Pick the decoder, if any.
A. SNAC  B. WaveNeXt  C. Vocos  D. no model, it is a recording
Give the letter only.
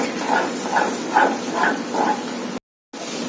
D